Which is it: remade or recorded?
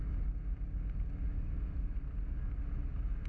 recorded